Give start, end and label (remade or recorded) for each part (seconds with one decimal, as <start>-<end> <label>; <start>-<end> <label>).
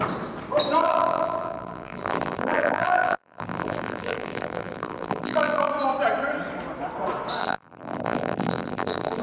0.0-0.8 recorded; 0.8-5.7 remade; 5.7-7.4 recorded; 7.4-9.2 remade